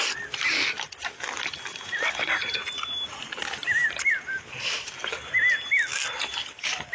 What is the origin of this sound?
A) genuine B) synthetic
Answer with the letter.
A